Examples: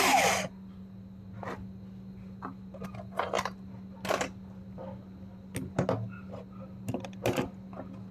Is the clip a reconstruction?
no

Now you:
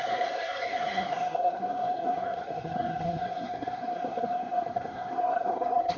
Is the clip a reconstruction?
yes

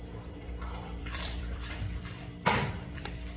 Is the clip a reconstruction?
yes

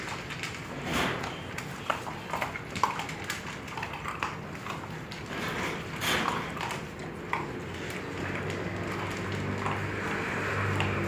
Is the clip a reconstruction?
no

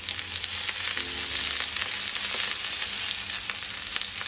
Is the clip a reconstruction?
no